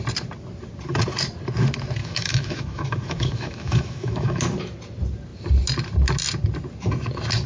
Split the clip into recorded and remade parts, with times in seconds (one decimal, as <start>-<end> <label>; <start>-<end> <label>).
0.0-2.0 recorded; 2.0-4.4 remade; 4.4-7.5 recorded